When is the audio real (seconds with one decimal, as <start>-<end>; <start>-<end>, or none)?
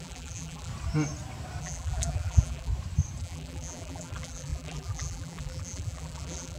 0.7-1.6; 2.7-3.2